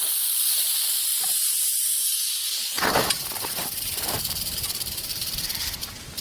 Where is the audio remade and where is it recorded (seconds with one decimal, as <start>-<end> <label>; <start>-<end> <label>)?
0.0-1.1 recorded; 1.1-1.9 remade; 1.9-2.4 recorded; 2.4-6.2 remade